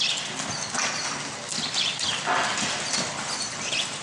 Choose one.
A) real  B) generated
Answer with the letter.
A